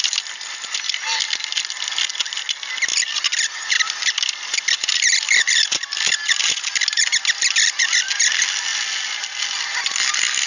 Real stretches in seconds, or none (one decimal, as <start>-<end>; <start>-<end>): 0.0-10.5

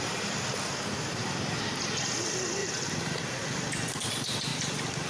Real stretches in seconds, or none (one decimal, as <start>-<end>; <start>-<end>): 0.0-2.6; 4.1-5.1